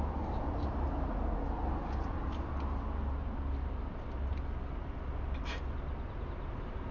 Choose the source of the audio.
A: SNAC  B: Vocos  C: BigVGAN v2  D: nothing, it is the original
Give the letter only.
D